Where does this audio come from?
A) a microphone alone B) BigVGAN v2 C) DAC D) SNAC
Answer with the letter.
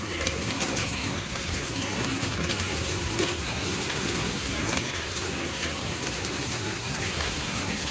D